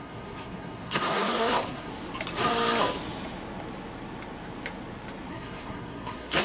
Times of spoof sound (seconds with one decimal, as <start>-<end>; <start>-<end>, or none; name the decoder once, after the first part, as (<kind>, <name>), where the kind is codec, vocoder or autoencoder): 0.0-1.9 (codec, SNAC); 5.3-6.4